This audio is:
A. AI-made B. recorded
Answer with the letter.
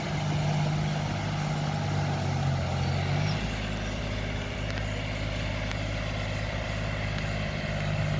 B